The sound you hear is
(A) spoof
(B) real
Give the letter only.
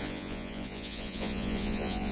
A